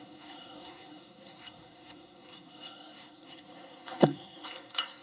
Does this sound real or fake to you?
fake